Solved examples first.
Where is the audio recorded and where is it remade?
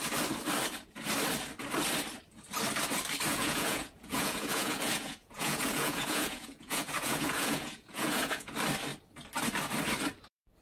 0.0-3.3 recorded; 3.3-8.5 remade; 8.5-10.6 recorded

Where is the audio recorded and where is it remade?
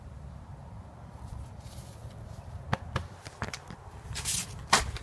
0.0-2.0 remade; 2.0-4.6 recorded; 4.6-5.0 remade